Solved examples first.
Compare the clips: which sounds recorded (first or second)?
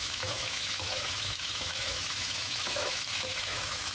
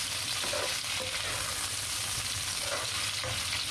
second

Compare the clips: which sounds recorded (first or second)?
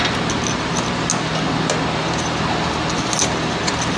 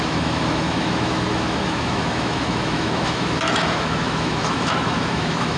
first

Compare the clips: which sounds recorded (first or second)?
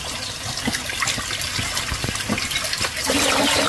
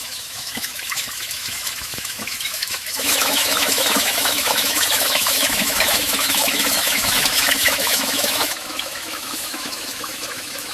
first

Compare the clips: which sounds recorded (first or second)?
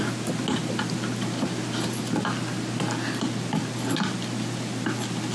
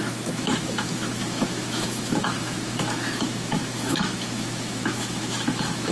first